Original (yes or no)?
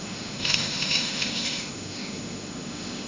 no